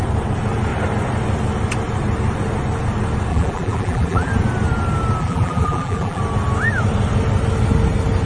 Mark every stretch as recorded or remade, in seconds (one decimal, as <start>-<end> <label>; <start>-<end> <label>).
0.0-3.3 recorded; 3.3-4.3 remade; 4.3-5.2 recorded; 5.2-6.2 remade; 6.2-8.3 recorded